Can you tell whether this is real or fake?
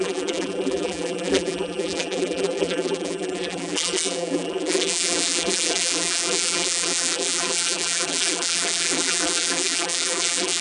fake